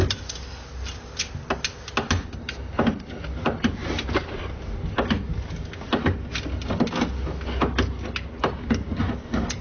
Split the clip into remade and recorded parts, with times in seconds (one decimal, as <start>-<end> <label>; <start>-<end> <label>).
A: 0.0-8.4 recorded; 8.4-9.0 remade; 9.0-9.6 recorded